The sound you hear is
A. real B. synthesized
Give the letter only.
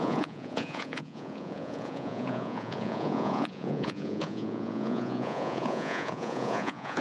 B